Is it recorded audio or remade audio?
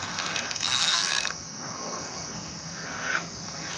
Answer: remade